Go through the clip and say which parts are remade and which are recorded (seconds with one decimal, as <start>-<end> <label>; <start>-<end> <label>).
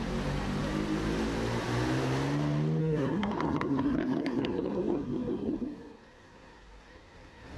0.0-2.8 recorded; 2.8-7.6 remade